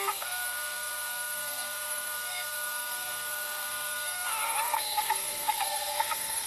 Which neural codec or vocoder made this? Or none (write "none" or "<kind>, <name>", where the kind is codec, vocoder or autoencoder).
codec, SNAC